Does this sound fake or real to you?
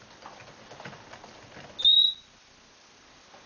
real